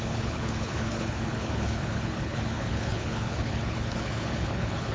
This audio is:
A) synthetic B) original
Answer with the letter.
A